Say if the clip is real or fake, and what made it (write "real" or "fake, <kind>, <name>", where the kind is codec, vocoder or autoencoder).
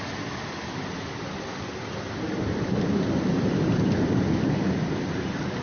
real